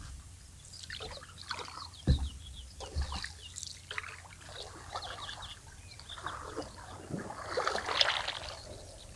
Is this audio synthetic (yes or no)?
no